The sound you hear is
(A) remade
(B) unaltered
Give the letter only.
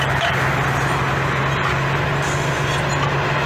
B